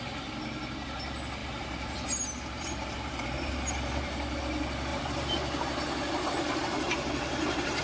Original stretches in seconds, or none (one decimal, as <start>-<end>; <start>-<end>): 0.0-1.4; 4.4-4.9